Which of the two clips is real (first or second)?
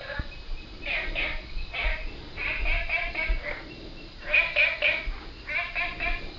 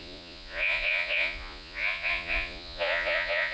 first